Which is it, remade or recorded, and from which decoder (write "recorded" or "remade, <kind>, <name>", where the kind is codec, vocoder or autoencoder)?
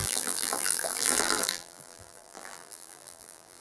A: remade, vocoder, BigVGAN v2